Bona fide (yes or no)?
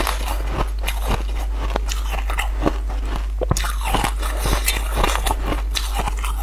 yes